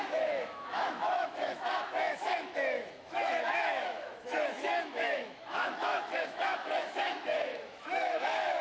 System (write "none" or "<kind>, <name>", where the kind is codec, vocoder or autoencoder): autoencoder, DAC-VAE